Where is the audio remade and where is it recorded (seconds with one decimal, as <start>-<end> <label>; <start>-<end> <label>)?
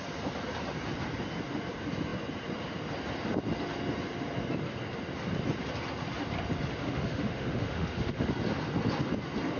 0.0-6.8 recorded; 6.8-8.3 remade; 8.3-9.6 recorded